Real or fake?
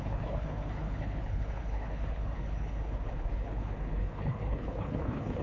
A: fake